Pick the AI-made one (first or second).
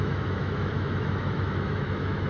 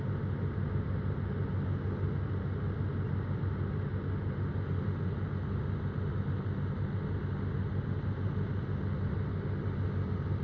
first